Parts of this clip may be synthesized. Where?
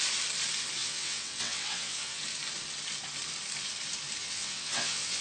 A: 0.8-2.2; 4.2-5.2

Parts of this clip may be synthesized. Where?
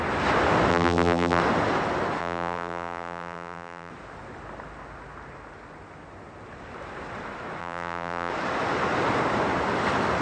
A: 0.7-1.4; 2.2-3.9; 7.6-8.3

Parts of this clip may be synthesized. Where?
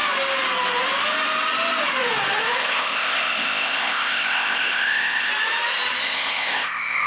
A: 2.6-5.3; 6.0-7.1